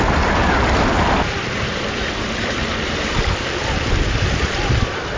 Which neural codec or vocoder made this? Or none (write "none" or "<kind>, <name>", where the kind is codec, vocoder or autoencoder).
vocoder, BigVGAN v2